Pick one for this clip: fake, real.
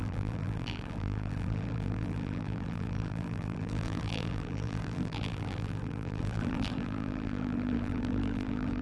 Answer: fake